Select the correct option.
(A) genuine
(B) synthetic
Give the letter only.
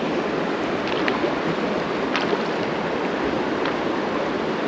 A